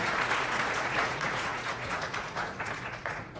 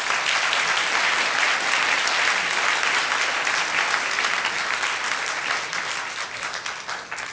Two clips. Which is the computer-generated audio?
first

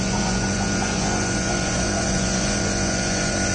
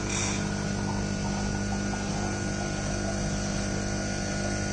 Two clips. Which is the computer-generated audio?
first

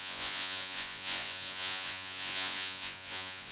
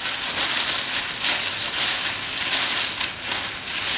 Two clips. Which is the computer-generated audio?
first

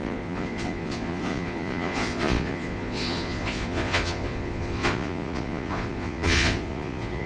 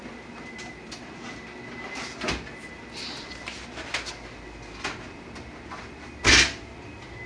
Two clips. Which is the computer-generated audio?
first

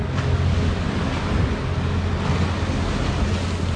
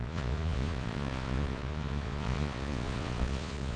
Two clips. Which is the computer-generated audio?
second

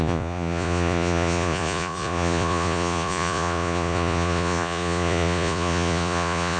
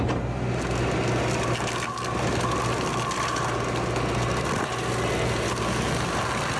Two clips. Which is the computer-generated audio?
first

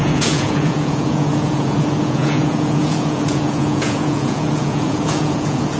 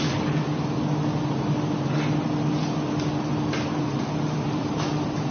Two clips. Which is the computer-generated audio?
first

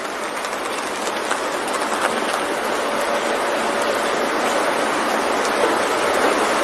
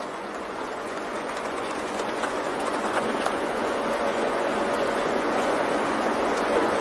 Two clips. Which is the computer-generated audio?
second